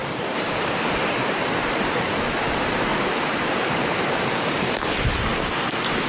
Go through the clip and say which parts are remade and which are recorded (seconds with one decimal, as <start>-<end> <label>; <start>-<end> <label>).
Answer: 0.0-5.3 remade; 5.3-6.1 recorded